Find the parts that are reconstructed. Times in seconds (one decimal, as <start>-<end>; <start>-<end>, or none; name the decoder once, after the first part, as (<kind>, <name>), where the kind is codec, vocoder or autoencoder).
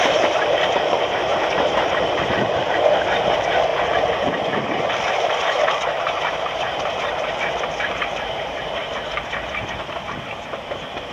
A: 0.0-3.7 (vocoder, BigVGAN v2); 4.9-8.8